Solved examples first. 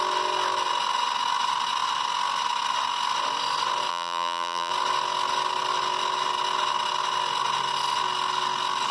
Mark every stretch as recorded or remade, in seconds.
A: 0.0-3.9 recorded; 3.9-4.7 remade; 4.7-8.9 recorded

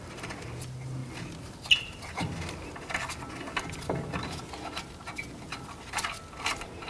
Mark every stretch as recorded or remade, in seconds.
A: 0.0-6.9 recorded

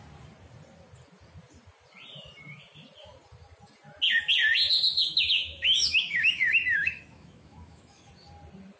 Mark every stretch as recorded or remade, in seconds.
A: 0.0-5.0 recorded; 5.0-8.1 remade; 8.1-8.8 recorded

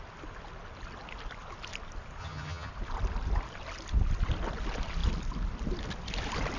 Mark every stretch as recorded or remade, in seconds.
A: 0.0-2.2 recorded; 2.2-2.7 remade; 2.7-6.6 recorded

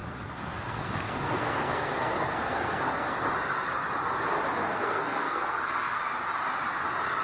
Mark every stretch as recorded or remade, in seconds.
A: 0.0-3.3 remade; 3.3-4.6 recorded; 4.6-6.0 remade; 6.0-7.2 recorded

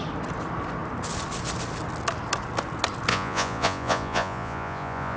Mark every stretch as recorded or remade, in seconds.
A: 0.0-3.1 recorded; 3.1-5.2 remade

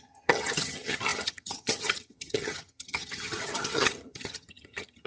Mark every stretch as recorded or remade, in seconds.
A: 0.0-5.1 remade

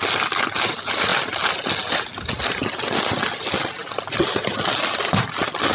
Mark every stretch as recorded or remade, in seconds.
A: 0.0-5.7 recorded